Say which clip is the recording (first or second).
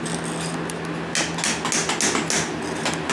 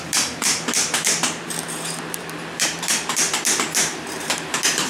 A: first